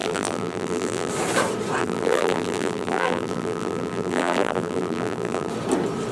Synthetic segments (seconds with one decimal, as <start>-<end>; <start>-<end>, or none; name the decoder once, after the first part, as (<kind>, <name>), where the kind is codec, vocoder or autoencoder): 0.0-1.1 (vocoder, BigVGAN v2); 1.8-5.5